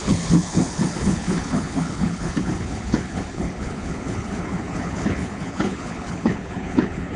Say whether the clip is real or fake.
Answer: fake